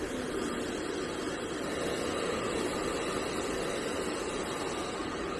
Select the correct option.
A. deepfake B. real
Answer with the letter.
B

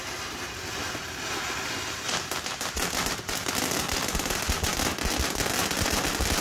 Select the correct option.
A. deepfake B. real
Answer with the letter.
B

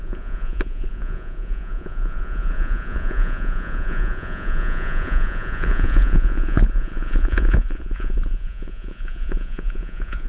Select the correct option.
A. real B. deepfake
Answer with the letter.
B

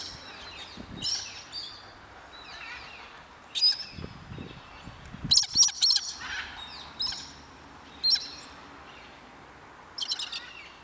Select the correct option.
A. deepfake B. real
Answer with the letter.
B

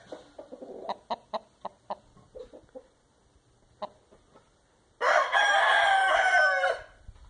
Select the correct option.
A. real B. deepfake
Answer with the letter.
A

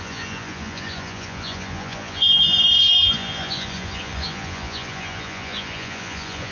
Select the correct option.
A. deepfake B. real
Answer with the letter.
A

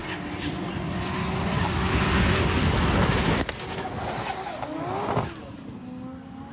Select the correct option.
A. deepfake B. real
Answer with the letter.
B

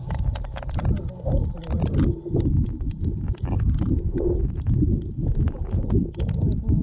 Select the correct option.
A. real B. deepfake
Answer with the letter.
A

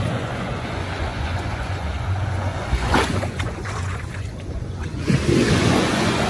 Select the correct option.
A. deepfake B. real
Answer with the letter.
A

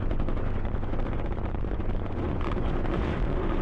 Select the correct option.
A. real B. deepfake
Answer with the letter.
B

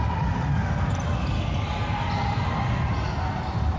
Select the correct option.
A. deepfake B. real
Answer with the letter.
B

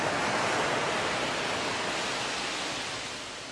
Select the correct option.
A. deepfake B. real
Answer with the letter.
B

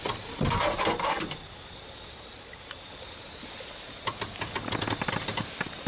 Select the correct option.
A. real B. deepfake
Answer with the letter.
A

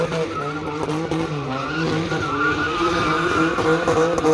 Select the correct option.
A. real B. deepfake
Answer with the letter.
A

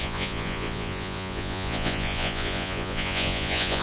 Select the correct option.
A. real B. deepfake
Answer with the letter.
B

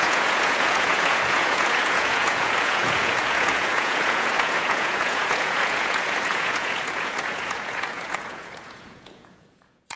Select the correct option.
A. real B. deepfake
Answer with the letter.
B